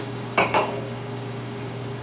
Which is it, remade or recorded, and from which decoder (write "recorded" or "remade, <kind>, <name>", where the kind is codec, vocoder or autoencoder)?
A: remade, codec, DAC